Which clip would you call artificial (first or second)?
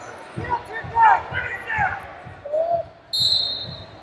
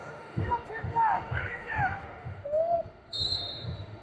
second